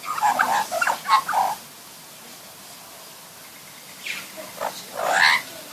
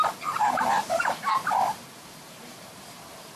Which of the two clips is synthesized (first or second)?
second